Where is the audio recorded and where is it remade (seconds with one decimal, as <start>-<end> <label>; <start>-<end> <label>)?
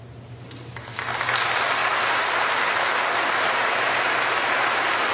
0.0-5.1 recorded